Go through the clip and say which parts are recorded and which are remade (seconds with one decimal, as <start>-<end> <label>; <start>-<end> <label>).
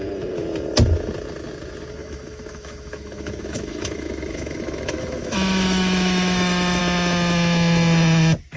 0.0-2.0 recorded; 2.0-6.8 remade; 6.8-8.6 recorded